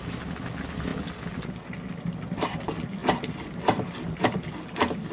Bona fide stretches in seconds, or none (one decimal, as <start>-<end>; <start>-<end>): 0.0-5.1